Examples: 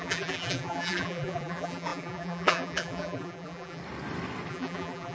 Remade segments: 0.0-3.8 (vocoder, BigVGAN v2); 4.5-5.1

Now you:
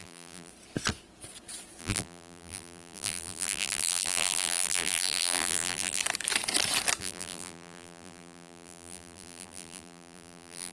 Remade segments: 0.0-0.5 (vocoder, BigVGAN v2); 1.8-6.0; 7.0-10.7

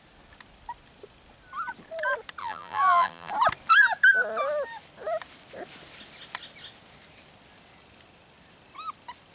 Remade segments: 2.4-3.3 (vocoder, BigVGAN v2)

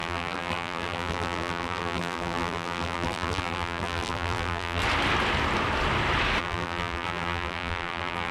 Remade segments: 0.0-4.8 (vocoder, BigVGAN v2); 6.4-8.3